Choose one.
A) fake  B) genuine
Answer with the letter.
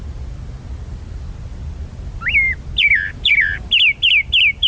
B